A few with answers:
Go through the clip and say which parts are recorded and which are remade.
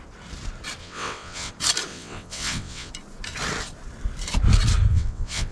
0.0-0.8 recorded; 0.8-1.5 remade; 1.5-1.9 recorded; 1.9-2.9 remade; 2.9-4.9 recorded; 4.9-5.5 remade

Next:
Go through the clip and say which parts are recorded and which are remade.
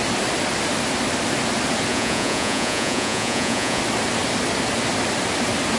0.0-1.9 recorded; 1.9-3.8 remade; 3.8-5.8 recorded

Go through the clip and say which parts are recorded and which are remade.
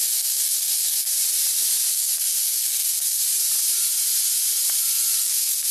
0.0-1.1 remade; 1.1-1.9 recorded; 1.9-3.2 remade; 3.2-5.2 recorded; 5.2-5.7 remade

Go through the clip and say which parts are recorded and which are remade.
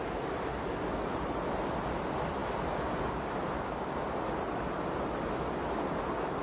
0.0-6.4 recorded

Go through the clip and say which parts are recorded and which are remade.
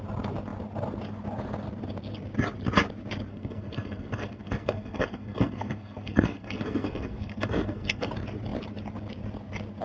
0.0-3.3 recorded; 3.3-8.1 remade; 8.1-9.8 recorded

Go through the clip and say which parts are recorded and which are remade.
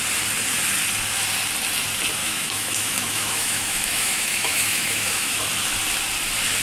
0.0-2.2 recorded; 2.2-5.4 remade; 5.4-6.6 recorded